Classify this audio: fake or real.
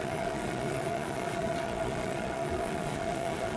fake